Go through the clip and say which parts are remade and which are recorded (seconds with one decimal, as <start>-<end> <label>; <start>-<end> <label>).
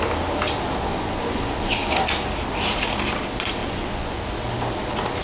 0.0-0.9 recorded; 0.9-1.9 remade; 1.9-3.6 recorded; 3.6-4.2 remade; 4.2-5.2 recorded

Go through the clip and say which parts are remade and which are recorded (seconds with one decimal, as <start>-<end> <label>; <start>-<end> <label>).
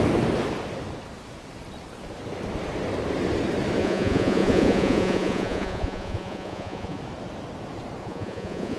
0.0-3.8 recorded; 3.8-7.0 remade; 7.0-8.0 recorded; 8.0-8.8 remade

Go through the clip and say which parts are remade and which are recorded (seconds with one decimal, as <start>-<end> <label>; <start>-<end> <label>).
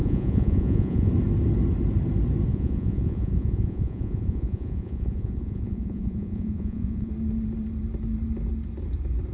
0.0-1.1 remade; 1.1-2.5 recorded; 2.5-7.1 remade; 7.1-9.3 recorded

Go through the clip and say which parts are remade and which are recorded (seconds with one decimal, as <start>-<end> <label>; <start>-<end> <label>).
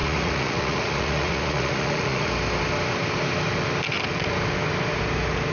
0.0-2.3 remade; 2.3-5.5 recorded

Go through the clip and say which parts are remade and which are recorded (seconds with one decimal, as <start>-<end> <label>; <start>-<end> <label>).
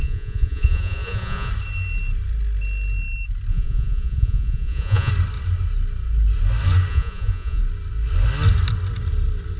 0.0-1.5 remade; 1.5-3.5 recorded; 3.5-5.1 remade; 5.1-6.9 recorded; 6.9-7.6 remade; 7.6-9.6 recorded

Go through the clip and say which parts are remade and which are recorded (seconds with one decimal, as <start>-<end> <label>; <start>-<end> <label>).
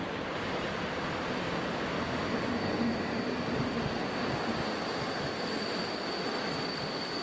0.0-7.2 recorded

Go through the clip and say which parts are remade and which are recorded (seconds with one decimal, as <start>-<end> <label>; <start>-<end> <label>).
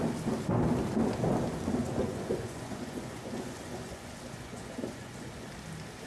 0.0-1.8 recorded; 1.8-5.5 remade; 5.5-6.1 recorded